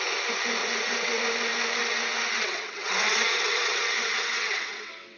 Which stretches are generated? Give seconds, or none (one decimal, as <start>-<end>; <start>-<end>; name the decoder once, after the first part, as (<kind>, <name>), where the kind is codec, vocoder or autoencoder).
0.6-1.2 (vocoder, WaveNeXt); 1.8-5.2